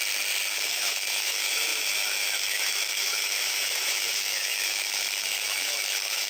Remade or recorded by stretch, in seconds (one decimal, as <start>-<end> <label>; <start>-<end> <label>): 0.0-0.5 recorded; 0.5-6.3 remade